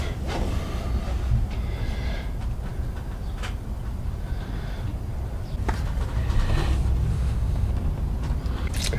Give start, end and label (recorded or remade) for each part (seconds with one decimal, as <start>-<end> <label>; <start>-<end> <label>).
0.0-7.1 recorded; 7.1-7.7 remade; 7.7-9.0 recorded